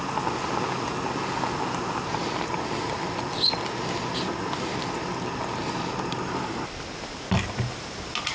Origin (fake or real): real